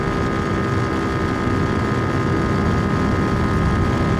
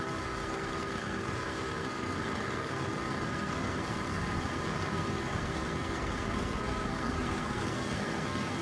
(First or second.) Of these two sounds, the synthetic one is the second